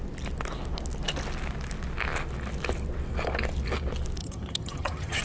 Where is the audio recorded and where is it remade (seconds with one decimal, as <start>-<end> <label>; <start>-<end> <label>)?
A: 0.0-4.2 recorded; 4.2-5.2 remade